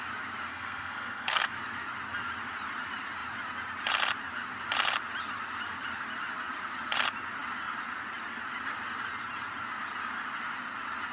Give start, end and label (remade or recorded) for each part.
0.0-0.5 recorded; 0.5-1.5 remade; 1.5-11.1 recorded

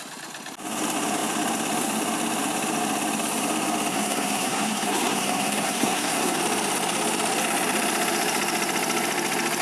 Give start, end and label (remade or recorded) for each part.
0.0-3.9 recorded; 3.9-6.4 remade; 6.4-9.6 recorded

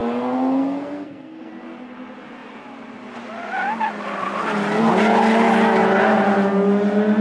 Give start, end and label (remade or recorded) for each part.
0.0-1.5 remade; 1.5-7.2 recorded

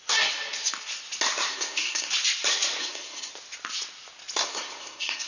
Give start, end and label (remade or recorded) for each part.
0.0-1.5 recorded; 1.5-2.1 remade; 2.1-2.8 recorded; 2.8-3.3 remade; 3.3-4.4 recorded; 4.4-5.3 remade